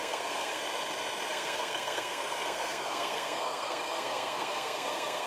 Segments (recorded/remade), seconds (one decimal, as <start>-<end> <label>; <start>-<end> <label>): 0.0-0.6 remade; 0.6-1.3 recorded; 1.3-5.3 remade